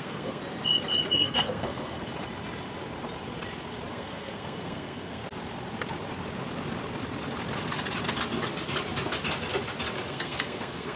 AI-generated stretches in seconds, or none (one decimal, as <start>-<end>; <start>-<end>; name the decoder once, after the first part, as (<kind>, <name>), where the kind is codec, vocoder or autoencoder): 0.0-0.4 (codec, SNAC); 1.1-2.1; 3.9-5.2; 10.1-11.0